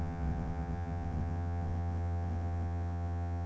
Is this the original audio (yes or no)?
no